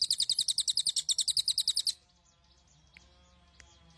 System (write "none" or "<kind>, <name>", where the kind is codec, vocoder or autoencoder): none